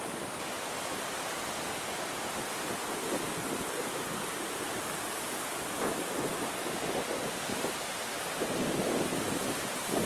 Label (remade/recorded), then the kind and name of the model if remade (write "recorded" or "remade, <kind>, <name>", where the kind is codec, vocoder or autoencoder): recorded